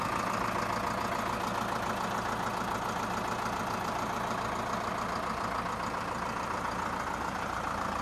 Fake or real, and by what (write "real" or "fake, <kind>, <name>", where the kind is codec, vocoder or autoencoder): real